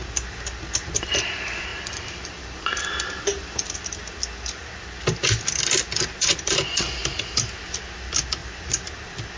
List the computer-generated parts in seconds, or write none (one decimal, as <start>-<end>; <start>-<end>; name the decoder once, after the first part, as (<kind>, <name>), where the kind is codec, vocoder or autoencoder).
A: 1.7-2.8 (vocoder, BigVGAN v2); 8.4-8.9

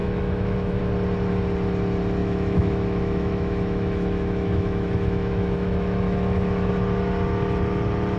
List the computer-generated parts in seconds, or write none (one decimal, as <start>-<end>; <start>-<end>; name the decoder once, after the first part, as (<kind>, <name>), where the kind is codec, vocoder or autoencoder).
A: 0.0-0.8 (autoencoder, DAC-VAE); 2.2-6.7

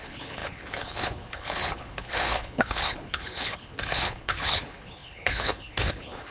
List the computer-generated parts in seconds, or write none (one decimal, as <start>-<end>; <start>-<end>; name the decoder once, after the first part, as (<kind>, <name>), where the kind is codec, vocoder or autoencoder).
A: 0.0-6.3 (codec, HILCodec)

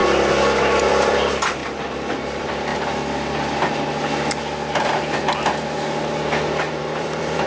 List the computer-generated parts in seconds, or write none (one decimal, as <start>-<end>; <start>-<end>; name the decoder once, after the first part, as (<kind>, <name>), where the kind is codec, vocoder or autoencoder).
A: 0.6-1.6 (vocoder, BigVGAN v2); 2.2-2.7; 6.7-7.5

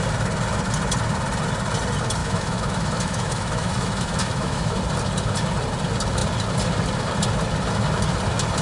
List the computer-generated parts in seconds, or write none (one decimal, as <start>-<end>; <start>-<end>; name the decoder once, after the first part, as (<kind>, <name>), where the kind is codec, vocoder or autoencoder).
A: 2.2-4.8 (autoencoder, DAC-VAE)